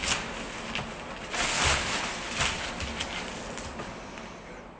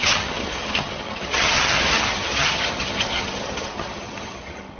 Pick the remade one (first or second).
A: second